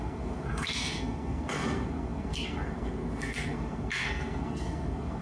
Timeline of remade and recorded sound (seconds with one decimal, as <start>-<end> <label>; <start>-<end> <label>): 0.0-5.2 remade